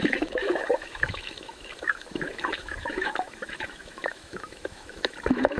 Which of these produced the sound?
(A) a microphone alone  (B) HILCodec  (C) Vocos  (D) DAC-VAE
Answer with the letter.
D